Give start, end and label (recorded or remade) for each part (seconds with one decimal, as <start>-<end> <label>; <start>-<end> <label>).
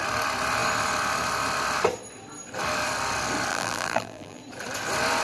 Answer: 0.0-3.5 recorded; 3.5-4.4 remade; 4.4-5.2 recorded